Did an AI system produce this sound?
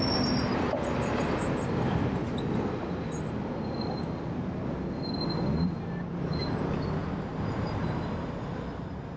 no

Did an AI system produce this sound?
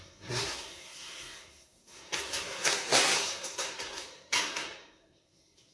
yes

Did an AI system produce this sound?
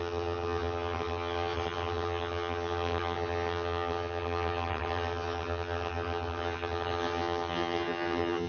yes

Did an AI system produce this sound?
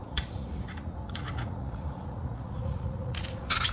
yes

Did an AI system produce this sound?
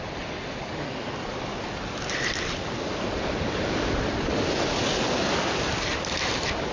no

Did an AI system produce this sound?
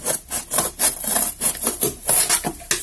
no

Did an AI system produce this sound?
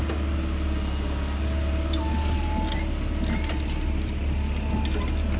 no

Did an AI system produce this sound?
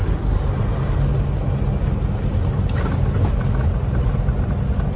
no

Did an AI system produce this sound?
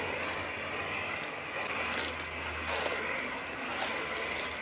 no